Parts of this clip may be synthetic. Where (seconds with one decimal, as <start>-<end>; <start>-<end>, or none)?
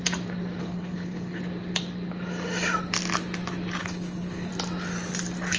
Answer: 0.6-1.4; 3.8-4.5